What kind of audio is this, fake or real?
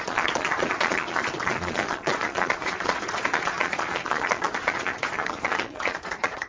fake